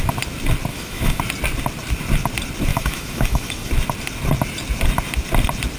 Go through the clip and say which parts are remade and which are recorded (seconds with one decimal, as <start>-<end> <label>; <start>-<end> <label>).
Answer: 0.0-0.7 recorded; 0.7-1.2 remade; 1.2-2.7 recorded; 2.7-3.7 remade; 3.7-5.8 recorded